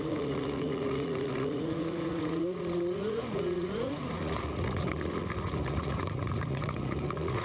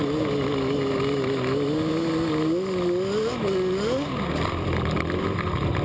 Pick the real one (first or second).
second